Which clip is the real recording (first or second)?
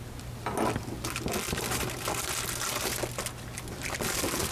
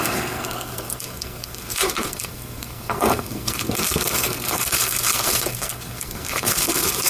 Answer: first